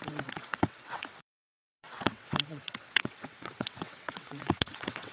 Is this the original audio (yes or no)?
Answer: no